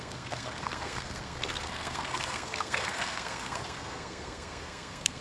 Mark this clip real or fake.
fake